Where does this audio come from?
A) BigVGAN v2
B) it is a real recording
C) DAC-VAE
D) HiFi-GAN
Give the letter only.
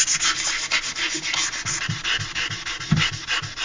B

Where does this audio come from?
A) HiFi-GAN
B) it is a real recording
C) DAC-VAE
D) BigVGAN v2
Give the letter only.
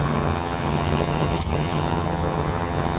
A